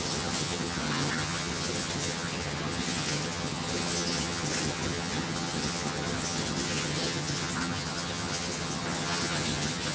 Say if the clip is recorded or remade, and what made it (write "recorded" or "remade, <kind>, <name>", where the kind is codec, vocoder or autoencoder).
remade, vocoder, HiFi-GAN